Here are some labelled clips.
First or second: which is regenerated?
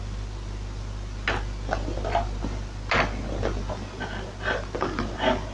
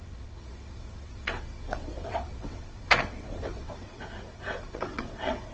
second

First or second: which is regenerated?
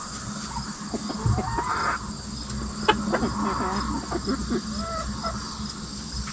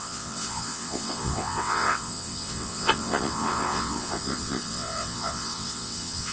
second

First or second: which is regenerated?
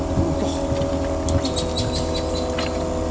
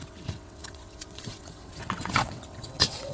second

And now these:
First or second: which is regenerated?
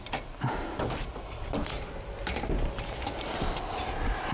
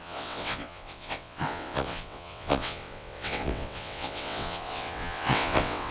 second